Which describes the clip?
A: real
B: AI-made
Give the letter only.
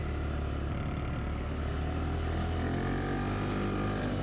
A